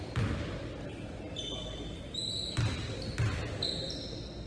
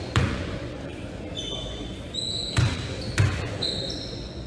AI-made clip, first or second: second